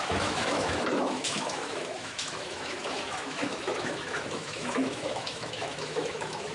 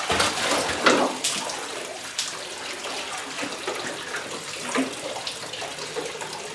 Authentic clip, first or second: second